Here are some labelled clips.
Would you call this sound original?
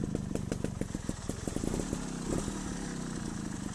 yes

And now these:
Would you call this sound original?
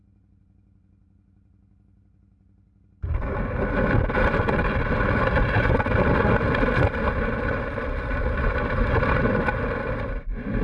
yes